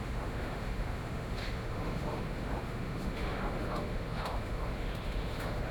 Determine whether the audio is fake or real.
fake